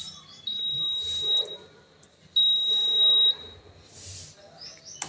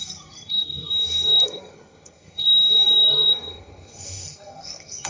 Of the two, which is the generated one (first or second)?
second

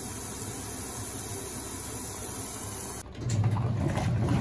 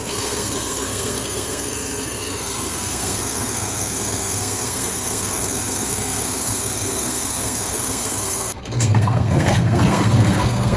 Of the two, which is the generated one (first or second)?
second